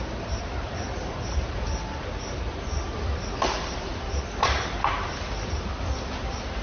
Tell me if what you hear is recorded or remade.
remade